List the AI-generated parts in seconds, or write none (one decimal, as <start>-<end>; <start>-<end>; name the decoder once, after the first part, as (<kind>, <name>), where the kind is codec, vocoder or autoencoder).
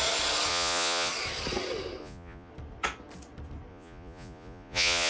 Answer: 0.5-1.1 (vocoder, Vocos); 2.0-2.5; 3.7-5.1